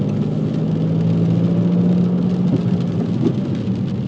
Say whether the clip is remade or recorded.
recorded